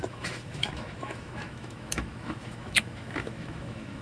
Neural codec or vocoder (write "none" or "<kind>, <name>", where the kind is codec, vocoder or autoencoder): autoencoder, DAC-VAE